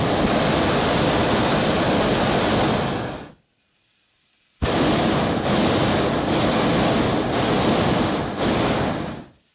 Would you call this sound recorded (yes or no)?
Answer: yes